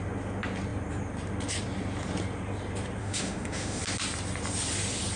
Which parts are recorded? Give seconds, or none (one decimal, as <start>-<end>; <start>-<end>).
0.0-3.0; 3.8-5.2